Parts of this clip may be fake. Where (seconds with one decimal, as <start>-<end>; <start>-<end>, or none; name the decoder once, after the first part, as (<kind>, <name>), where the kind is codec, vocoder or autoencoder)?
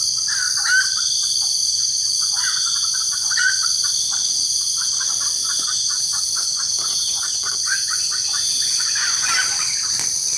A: 1.6-3.6 (vocoder, Vocos); 4.3-4.9; 5.4-9.3